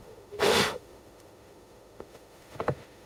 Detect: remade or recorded remade